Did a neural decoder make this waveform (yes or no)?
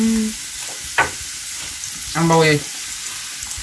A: no